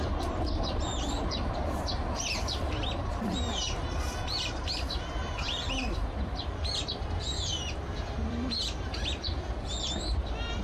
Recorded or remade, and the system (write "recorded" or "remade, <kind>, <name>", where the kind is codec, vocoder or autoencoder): remade, vocoder, BigVGAN v2